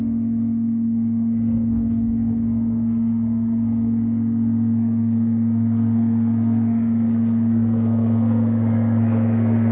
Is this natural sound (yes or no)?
no